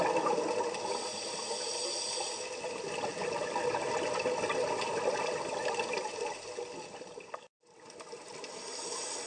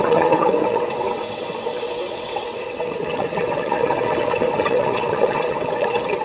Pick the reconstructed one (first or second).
second